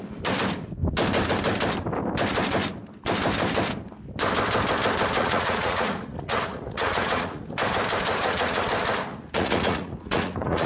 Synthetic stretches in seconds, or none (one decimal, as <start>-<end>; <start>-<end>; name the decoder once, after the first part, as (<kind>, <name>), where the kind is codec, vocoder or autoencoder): 5.2-7.4 (vocoder, Vocos); 8.1-8.6; 9.1-10.7